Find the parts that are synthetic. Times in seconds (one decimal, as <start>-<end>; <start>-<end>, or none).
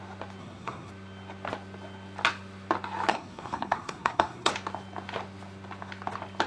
0.4-0.9; 3.1-4.5